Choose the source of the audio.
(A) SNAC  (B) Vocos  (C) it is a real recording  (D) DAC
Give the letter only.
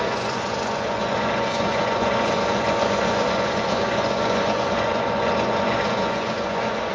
B